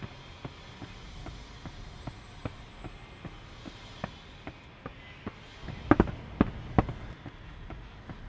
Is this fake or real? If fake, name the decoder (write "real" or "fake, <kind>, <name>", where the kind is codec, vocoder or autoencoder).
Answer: real